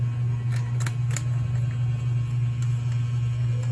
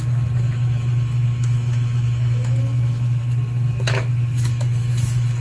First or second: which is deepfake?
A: second